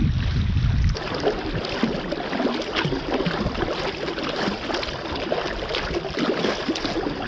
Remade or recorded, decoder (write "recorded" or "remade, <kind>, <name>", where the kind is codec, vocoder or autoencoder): recorded